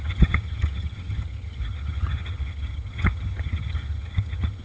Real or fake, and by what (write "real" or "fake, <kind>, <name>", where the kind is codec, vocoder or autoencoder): fake, vocoder, HiFi-GAN